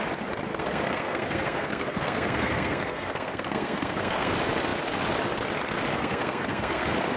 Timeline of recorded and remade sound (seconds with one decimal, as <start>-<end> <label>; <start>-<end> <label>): 0.0-0.5 recorded; 0.5-4.3 remade; 4.3-5.9 recorded; 5.9-7.2 remade